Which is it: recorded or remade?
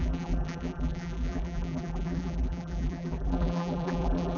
remade